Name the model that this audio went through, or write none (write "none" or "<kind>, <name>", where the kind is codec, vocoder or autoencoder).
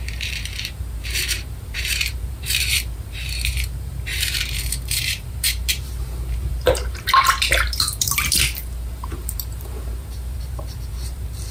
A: vocoder, BigVGAN v2